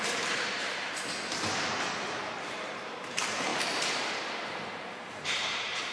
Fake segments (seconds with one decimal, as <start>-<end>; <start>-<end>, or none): 0.0-5.9